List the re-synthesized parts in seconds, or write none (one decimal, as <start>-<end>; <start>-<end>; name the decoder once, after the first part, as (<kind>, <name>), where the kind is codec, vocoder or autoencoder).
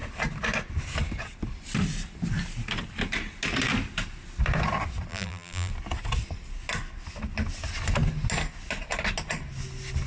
5.1-5.7 (vocoder, BigVGAN v2)